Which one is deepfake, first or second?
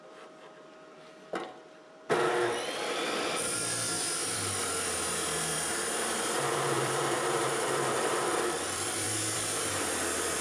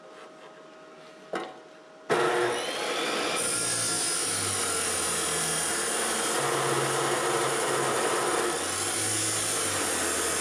first